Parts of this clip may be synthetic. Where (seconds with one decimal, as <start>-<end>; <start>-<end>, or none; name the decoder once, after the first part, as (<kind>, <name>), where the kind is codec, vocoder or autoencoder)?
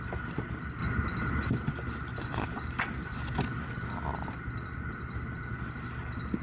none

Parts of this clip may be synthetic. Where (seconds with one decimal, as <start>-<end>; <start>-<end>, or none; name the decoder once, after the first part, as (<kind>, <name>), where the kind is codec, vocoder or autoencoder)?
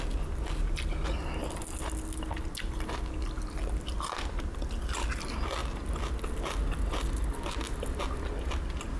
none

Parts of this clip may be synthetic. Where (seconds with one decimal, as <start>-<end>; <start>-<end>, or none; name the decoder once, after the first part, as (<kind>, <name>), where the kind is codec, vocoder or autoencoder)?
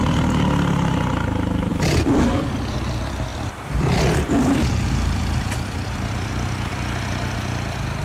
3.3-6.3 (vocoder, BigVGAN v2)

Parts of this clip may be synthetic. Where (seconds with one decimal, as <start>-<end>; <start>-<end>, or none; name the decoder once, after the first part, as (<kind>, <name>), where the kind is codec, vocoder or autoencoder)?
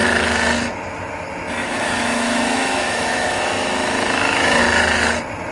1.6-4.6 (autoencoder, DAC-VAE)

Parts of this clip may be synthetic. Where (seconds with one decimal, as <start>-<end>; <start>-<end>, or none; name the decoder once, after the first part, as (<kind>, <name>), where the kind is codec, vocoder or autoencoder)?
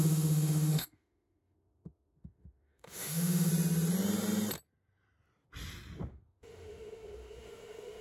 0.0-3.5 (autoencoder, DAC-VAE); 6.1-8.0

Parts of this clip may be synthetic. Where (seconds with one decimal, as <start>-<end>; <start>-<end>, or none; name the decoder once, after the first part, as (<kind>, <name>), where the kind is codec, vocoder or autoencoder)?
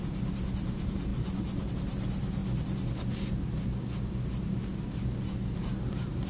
0.0-2.4 (vocoder, BigVGAN v2); 4.4-6.3